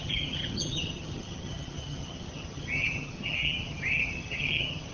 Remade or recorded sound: remade